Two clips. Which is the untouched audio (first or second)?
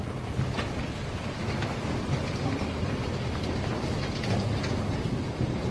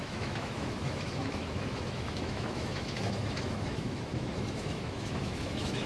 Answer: first